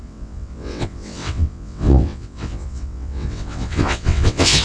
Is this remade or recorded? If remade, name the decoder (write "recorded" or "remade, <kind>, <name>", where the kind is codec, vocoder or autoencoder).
remade, vocoder, WaveNeXt